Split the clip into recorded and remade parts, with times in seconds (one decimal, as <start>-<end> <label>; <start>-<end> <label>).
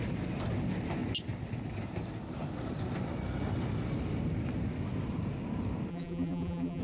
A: 0.0-5.9 recorded; 5.9-6.8 remade